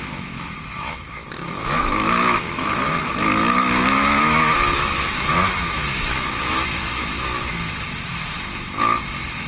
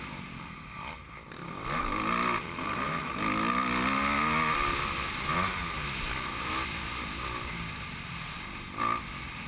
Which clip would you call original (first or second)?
second